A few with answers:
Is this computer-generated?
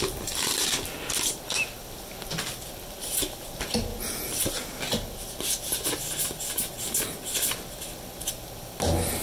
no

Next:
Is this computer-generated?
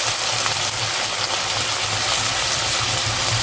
no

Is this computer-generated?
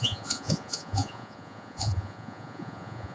yes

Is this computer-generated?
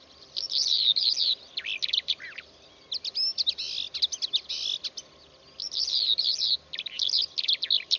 no